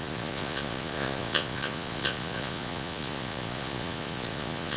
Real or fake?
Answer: fake